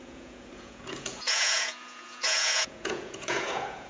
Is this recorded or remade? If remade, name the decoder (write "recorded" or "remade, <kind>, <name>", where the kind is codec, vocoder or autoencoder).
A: remade, vocoder, Vocos